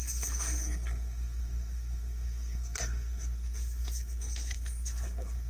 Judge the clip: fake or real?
fake